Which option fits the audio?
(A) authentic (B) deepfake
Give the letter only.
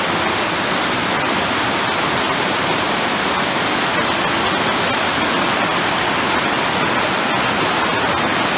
A